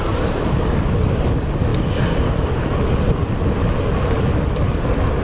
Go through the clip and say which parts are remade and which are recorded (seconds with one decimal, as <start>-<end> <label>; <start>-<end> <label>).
0.0-0.7 remade; 0.7-5.2 recorded